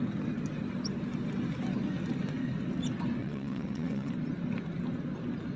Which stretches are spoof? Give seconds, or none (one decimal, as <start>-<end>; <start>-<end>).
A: 3.2-4.1

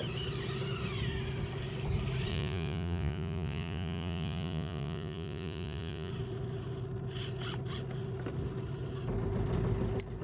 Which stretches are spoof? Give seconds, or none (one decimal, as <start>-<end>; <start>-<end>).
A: 2.3-6.1

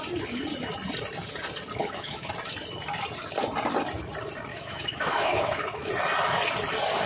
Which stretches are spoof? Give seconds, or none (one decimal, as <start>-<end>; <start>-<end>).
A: 1.8-2.3; 4.5-5.9